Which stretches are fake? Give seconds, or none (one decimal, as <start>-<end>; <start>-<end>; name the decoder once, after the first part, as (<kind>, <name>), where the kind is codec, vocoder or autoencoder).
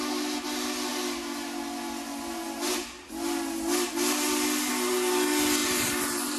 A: 5.6-6.4 (vocoder, BigVGAN v2)